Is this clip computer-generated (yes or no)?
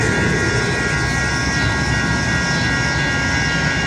no